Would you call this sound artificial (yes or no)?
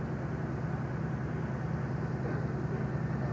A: no